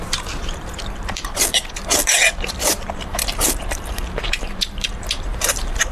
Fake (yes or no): yes